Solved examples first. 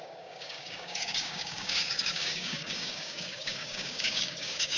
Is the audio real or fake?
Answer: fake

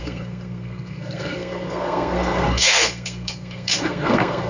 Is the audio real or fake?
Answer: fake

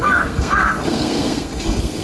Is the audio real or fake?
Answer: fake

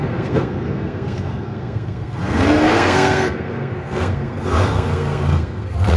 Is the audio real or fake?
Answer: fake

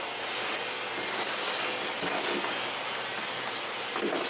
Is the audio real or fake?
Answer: real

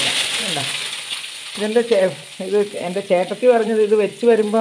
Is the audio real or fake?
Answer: fake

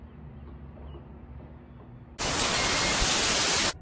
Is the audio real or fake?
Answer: real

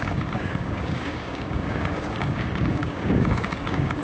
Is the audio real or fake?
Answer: fake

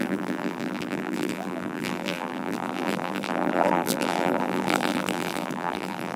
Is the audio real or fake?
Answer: fake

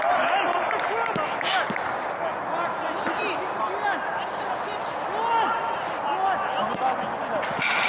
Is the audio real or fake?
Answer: real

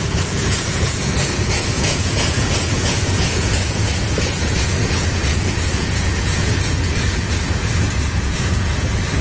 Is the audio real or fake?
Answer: fake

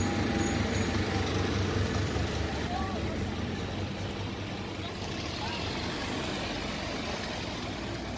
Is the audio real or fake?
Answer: real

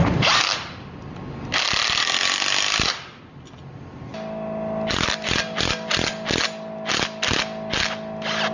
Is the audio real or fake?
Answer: real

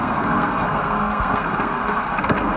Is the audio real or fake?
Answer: fake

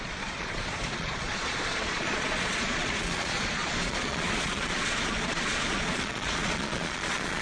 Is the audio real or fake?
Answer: fake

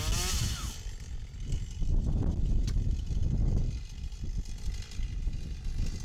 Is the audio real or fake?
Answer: real